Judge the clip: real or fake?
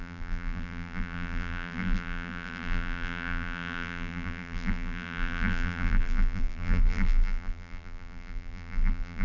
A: fake